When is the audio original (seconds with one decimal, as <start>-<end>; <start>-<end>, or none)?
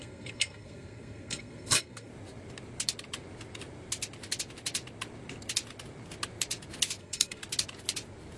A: 2.1-7.0; 7.4-8.4